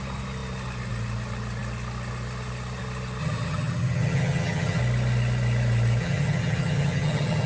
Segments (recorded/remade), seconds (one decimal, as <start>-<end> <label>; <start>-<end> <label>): 0.0-3.2 recorded; 3.2-4.8 remade; 4.8-6.0 recorded; 6.0-7.5 remade